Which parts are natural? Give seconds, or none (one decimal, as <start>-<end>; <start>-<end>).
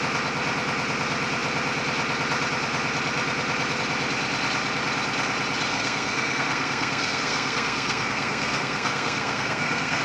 0.0-5.7